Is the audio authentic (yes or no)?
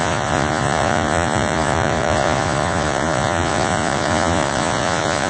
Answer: no